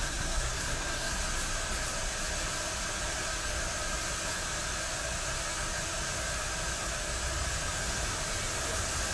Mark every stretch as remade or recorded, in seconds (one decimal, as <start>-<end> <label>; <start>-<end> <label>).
0.0-1.2 remade; 1.2-9.1 recorded